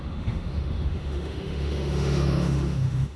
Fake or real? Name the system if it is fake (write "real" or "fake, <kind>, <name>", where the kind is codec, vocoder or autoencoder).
fake, autoencoder, DAC-VAE